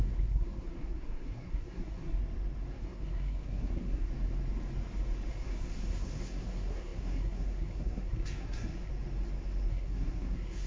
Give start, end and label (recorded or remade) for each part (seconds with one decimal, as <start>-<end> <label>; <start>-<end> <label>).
0.0-2.2 remade; 2.2-2.7 recorded; 2.7-4.1 remade; 4.1-5.3 recorded; 5.3-8.9 remade; 8.9-9.7 recorded; 9.7-10.7 remade